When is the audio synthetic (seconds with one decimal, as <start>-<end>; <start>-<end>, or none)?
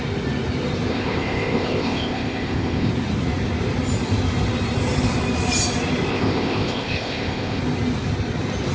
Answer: 0.9-2.9; 6.1-7.6